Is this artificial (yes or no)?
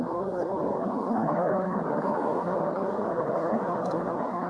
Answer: yes